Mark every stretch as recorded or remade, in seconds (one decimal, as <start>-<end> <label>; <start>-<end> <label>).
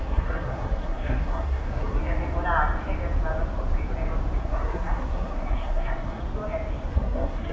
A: 0.0-2.0 remade; 2.0-4.4 recorded; 4.4-6.2 remade; 6.2-6.9 recorded; 6.9-7.5 remade